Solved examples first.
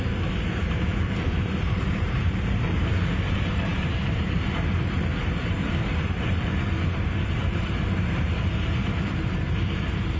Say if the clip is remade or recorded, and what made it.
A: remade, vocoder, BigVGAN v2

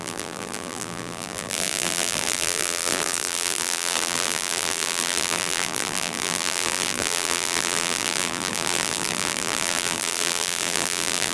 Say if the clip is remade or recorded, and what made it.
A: remade, vocoder, BigVGAN v2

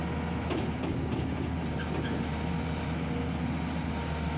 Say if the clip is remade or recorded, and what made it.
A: recorded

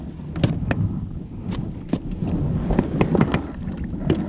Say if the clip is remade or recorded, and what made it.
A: recorded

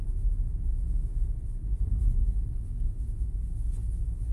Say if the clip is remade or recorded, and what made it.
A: recorded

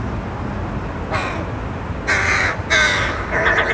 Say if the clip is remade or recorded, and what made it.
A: recorded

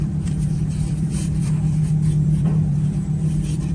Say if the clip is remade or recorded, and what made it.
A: remade, vocoder, BigVGAN v2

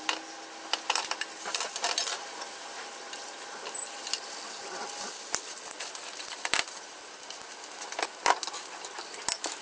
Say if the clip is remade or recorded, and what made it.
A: recorded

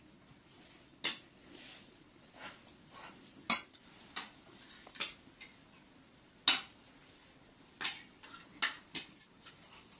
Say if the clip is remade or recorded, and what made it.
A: recorded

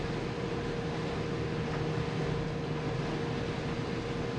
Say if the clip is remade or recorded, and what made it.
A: recorded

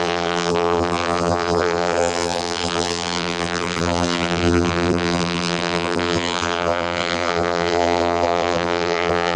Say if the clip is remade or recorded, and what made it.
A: remade, vocoder, BigVGAN v2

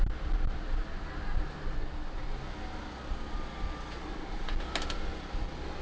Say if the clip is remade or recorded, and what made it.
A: recorded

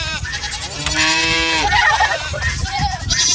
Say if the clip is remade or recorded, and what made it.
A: remade, vocoder, BigVGAN v2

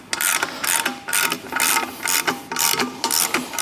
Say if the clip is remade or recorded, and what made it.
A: recorded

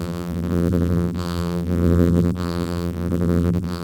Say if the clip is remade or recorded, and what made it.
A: remade, vocoder, BigVGAN v2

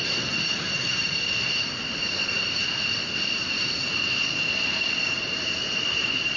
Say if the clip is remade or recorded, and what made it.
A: remade, vocoder, BigVGAN v2